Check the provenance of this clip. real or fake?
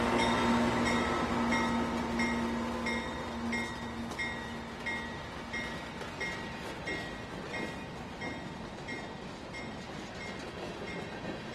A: real